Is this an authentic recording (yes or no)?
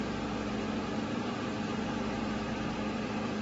yes